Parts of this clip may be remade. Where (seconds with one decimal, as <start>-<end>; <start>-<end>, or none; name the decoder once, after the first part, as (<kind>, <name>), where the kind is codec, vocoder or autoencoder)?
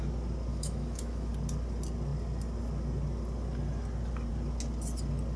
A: 0.5-1.3 (autoencoder, DAC-VAE)